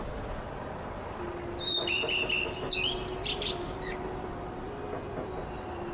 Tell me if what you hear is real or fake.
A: real